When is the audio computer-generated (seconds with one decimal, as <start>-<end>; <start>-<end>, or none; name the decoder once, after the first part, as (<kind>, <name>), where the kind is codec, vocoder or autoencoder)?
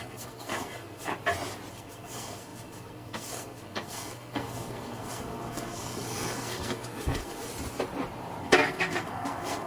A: 0.0-1.1 (codec, SNAC); 1.7-7.5; 8.4-9.7